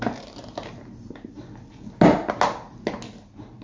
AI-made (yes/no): no